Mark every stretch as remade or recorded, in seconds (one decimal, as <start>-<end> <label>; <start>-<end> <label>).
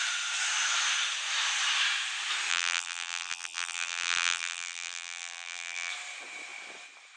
0.0-2.5 recorded; 2.5-5.9 remade; 5.9-7.2 recorded